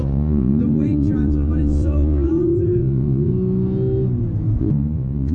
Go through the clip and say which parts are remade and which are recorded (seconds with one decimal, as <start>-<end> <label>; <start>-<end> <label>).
0.0-3.3 remade; 3.3-4.6 recorded; 4.6-5.3 remade